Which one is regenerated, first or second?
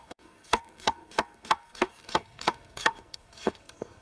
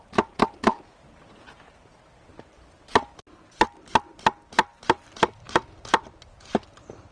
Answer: first